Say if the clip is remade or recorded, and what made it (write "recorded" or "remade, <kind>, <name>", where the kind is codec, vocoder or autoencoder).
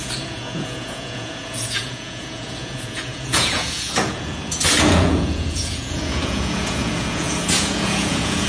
remade, vocoder, Vocos